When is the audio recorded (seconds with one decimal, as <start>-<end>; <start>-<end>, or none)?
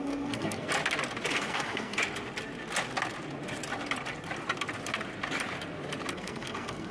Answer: 0.7-1.3; 2.0-6.1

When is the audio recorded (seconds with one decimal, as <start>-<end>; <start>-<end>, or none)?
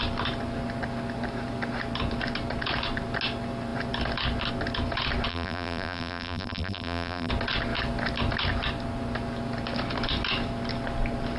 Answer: 0.0-5.3; 7.3-11.4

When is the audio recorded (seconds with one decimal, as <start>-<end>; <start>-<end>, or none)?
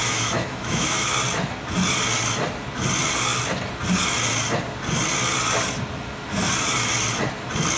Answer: 1.1-7.8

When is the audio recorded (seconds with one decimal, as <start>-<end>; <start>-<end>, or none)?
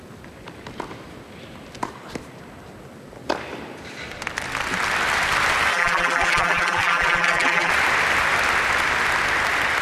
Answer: 0.0-5.7; 7.7-9.8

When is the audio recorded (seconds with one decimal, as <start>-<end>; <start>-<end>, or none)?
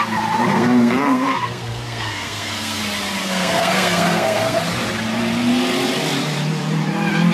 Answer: 0.0-0.5; 2.8-3.2; 4.6-7.3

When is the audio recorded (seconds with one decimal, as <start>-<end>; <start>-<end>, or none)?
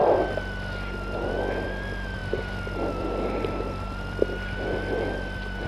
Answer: 0.0-5.7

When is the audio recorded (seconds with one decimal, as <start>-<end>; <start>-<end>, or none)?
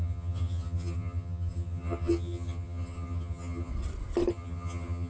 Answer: 3.7-4.3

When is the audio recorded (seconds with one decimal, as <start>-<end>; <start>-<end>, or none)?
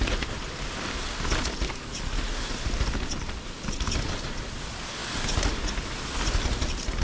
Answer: 0.0-7.0